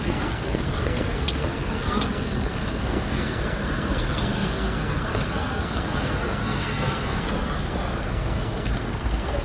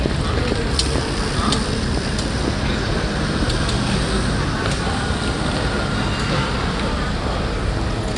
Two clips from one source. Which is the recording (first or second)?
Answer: second